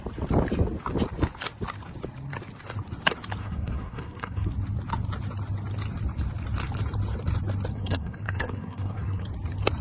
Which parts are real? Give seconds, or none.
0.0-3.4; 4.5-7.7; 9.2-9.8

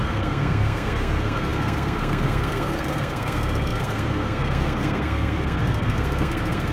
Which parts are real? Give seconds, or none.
none

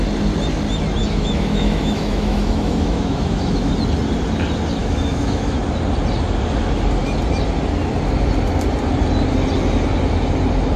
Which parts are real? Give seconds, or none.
0.0-1.0; 3.7-4.8; 5.6-10.8

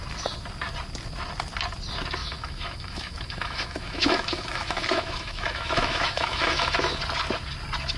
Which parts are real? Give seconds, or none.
0.0-2.2; 7.0-8.0